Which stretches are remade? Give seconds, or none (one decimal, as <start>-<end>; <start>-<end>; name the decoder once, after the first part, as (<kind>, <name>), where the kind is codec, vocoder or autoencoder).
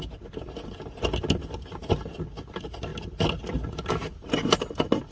1.8-2.5 (vocoder, BigVGAN v2)